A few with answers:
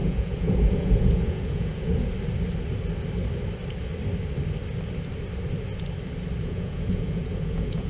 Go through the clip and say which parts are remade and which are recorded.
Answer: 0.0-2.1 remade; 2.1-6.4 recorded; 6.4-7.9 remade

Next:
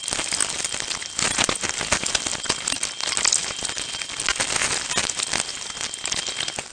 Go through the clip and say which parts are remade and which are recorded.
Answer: 0.0-6.7 recorded

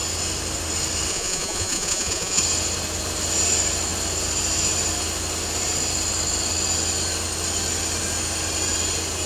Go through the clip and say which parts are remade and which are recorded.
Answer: 0.0-1.1 recorded; 1.1-2.4 remade; 2.4-9.3 recorded

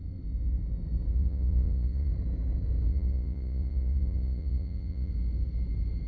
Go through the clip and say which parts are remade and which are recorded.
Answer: 0.0-1.1 recorded; 1.1-2.1 remade; 2.1-2.9 recorded; 2.9-5.1 remade; 5.1-6.1 recorded

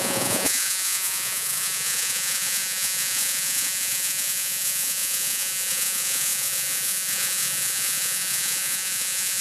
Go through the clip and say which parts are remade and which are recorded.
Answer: 0.0-9.4 remade

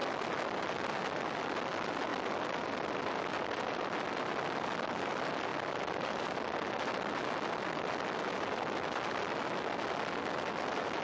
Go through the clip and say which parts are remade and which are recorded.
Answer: 0.0-11.0 recorded